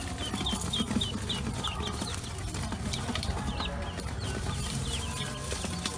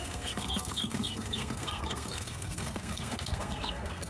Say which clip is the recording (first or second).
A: first